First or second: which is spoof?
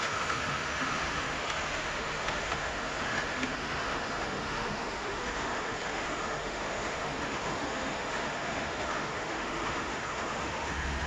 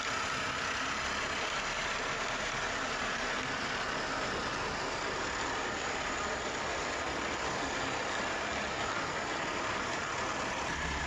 first